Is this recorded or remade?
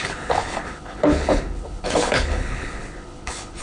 remade